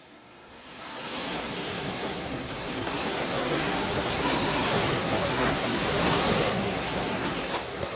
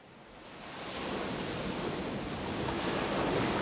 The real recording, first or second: second